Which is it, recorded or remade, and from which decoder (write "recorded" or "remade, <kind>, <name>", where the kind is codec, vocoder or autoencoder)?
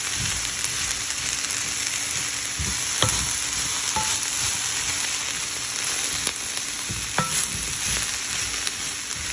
recorded